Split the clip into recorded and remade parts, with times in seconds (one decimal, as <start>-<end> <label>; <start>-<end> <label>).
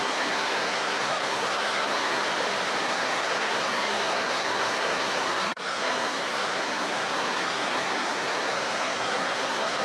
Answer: 0.0-2.2 remade; 2.2-2.8 recorded; 2.8-9.8 remade